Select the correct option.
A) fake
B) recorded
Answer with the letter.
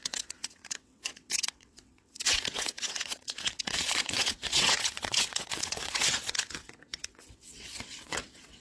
A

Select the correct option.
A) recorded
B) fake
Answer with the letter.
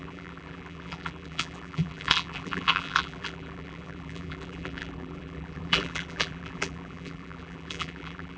B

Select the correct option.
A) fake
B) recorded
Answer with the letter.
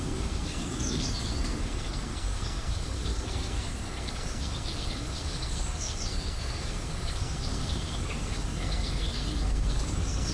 A